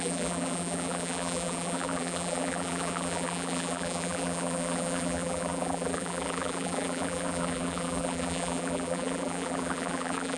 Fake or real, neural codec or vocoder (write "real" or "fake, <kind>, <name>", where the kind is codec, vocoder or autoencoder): fake, vocoder, BigVGAN v2